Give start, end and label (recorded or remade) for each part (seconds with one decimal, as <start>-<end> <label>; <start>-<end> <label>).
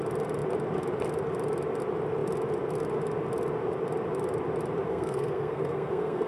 0.0-4.9 recorded; 4.9-6.3 remade